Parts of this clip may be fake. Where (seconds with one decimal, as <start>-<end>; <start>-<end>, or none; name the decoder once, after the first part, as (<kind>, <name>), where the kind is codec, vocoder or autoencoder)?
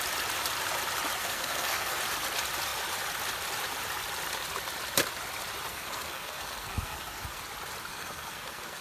1.2-2.0 (codec, SNAC); 5.7-7.4; 7.9-8.8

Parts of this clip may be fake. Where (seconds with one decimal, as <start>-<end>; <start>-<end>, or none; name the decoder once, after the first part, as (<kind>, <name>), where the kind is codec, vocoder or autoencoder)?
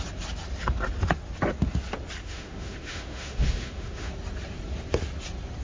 2.2-4.1 (autoencoder, DAC-VAE)